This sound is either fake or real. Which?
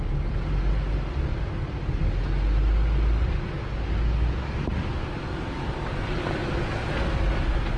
real